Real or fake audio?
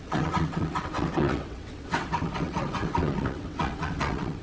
fake